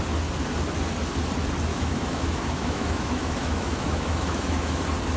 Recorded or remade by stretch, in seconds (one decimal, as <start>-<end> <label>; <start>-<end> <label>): 0.0-1.7 recorded; 1.7-4.8 remade; 4.8-5.2 recorded